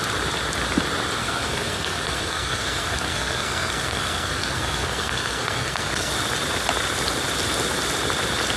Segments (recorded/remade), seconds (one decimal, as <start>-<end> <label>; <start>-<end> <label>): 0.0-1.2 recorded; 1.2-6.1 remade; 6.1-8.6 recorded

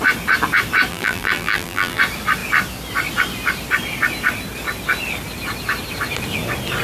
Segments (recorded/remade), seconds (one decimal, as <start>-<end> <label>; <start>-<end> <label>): 0.0-0.9 recorded; 0.9-2.0 remade; 2.0-6.8 recorded

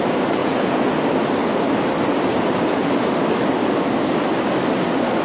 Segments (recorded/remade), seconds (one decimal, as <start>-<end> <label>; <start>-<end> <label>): 0.0-0.4 recorded; 0.4-0.9 remade; 0.9-5.2 recorded